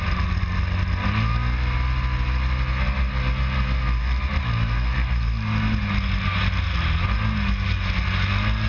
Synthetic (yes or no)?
no